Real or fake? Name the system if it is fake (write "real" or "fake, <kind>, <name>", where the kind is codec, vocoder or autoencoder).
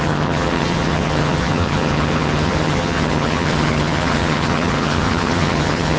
fake, vocoder, HiFi-GAN